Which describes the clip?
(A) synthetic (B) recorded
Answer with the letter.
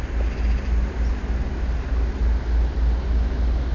B